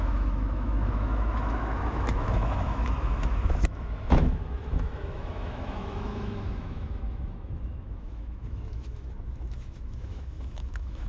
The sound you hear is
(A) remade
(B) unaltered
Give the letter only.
A